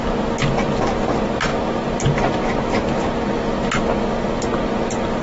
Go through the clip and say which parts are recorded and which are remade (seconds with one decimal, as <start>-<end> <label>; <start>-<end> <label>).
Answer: 0.0-5.2 recorded